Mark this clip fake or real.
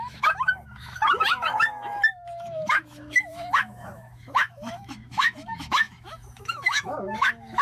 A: fake